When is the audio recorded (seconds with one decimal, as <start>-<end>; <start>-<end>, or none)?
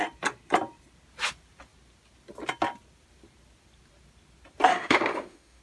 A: 0.0-4.7